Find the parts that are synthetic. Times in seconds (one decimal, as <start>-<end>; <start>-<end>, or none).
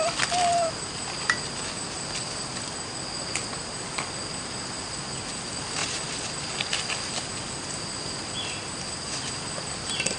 5.8-6.4